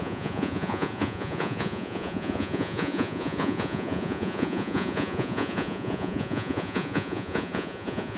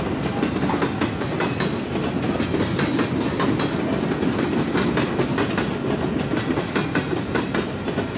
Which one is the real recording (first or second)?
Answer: second